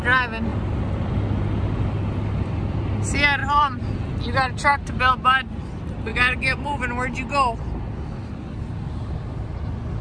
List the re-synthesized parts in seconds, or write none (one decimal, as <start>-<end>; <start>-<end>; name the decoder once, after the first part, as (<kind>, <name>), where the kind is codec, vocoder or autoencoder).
0.5-1.1 (vocoder, BigVGAN v2); 3.4-4.2; 6.1-6.8